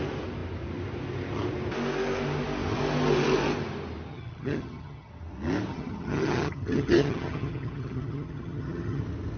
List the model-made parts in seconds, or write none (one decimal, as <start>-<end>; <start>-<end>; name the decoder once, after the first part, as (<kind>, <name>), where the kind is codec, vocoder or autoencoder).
4.1-5.1 (vocoder, HiFi-GAN); 5.7-9.0